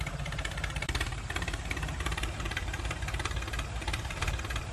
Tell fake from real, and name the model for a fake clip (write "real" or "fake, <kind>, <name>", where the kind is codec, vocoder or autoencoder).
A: fake, vocoder, BigVGAN v2